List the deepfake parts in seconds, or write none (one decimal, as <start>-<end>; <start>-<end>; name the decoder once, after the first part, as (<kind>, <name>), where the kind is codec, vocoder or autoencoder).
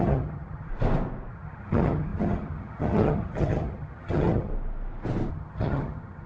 0.0-0.7 (vocoder, HiFi-GAN); 1.3-4.5; 5.3-6.3